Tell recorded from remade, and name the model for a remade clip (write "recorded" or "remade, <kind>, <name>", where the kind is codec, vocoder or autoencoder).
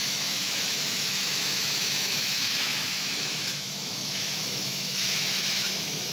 remade, autoencoder, DAC-VAE